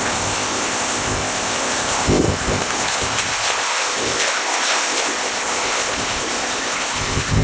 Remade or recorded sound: remade